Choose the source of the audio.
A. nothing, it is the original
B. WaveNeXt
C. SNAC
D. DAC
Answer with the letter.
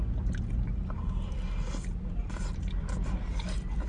A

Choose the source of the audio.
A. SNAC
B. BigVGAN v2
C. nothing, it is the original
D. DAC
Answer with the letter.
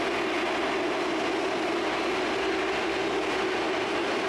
C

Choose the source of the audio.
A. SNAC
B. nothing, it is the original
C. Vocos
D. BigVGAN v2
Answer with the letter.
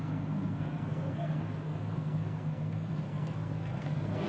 A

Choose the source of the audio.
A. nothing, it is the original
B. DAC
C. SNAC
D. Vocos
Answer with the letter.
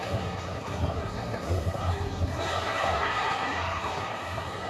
C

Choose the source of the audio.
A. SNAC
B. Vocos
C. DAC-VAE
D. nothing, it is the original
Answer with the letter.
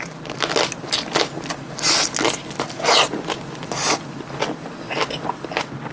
D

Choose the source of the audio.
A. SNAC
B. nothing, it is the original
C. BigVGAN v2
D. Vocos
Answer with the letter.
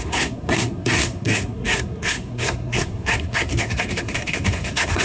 A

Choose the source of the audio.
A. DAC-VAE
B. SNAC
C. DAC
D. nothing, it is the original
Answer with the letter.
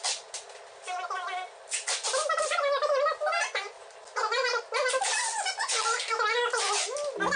D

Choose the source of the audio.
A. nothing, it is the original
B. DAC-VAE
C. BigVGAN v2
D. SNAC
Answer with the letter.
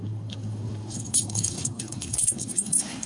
D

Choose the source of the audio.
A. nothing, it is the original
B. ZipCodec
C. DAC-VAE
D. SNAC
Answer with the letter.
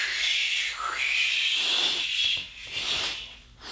A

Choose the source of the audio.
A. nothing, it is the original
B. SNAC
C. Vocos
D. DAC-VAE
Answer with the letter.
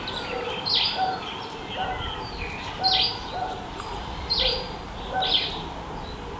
A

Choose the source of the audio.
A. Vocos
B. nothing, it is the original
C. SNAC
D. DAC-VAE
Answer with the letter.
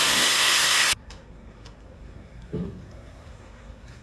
C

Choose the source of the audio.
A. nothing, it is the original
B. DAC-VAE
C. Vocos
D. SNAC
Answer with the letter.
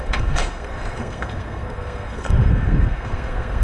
D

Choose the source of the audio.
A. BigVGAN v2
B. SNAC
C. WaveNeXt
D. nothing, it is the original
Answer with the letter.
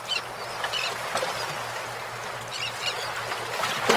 D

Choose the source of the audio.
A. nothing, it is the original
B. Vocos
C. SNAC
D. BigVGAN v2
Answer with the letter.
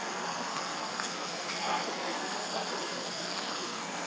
C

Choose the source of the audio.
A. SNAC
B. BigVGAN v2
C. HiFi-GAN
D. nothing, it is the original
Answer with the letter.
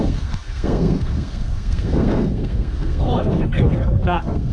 A